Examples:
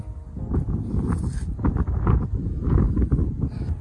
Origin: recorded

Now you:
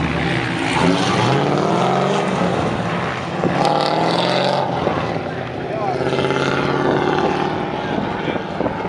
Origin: recorded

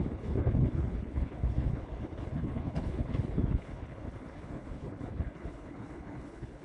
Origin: remade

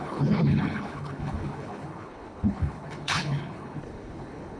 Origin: remade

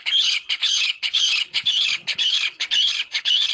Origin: remade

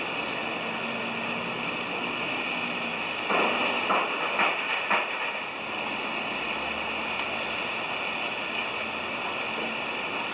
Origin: recorded